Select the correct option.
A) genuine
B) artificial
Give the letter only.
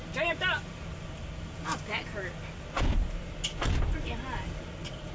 A